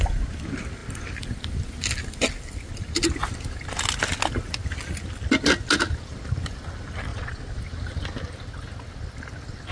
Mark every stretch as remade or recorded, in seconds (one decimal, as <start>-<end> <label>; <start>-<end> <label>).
0.0-7.1 recorded; 7.1-7.6 remade; 7.6-9.7 recorded